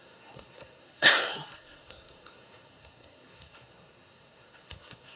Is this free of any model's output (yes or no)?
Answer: no